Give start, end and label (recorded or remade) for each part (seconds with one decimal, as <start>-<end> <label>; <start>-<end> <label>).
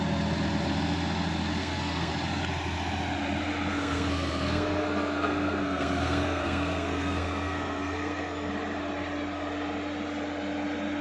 0.0-1.6 recorded; 1.6-2.1 remade; 2.1-3.7 recorded; 3.7-8.5 remade; 8.5-11.0 recorded